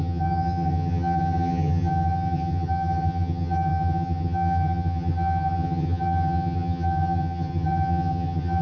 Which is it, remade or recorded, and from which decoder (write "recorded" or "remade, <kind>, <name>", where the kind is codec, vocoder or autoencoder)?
remade, vocoder, HiFi-GAN